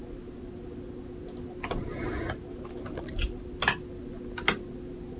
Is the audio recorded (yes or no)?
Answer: yes